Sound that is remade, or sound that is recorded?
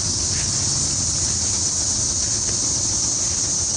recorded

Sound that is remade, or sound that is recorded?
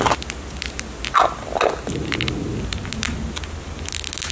recorded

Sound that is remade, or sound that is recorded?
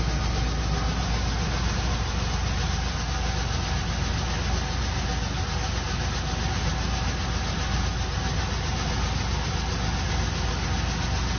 recorded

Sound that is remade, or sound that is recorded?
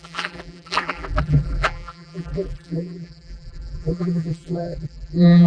remade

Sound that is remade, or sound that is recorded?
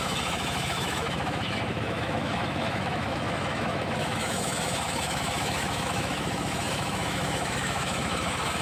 remade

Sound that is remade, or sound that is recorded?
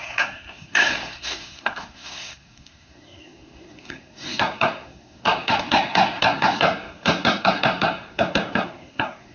remade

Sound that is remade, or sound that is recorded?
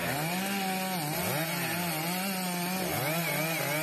recorded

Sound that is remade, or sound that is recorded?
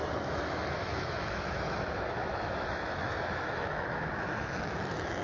remade